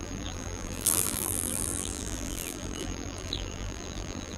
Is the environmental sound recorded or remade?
remade